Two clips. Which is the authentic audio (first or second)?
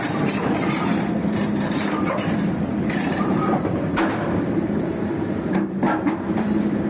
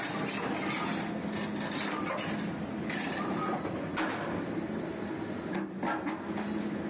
second